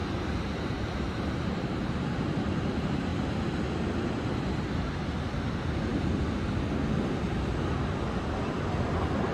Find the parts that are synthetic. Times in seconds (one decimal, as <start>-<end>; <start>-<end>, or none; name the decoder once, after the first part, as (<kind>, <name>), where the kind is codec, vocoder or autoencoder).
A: 0.0-2.2 (vocoder, BigVGAN v2)